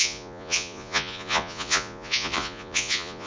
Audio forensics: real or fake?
fake